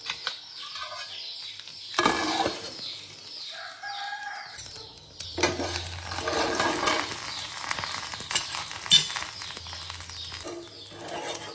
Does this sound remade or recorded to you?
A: recorded